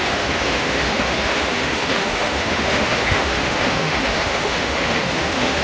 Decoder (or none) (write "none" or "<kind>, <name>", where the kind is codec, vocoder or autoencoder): autoencoder, DAC-VAE